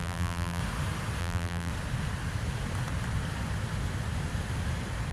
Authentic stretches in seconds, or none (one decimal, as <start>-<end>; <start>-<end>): 0.6-1.2; 1.7-5.1